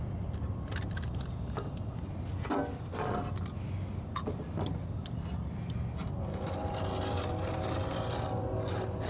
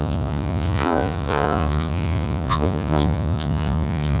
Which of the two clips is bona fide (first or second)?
first